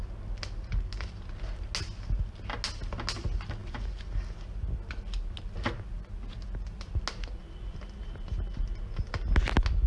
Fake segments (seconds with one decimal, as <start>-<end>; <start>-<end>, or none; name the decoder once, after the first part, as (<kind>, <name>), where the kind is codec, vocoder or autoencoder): none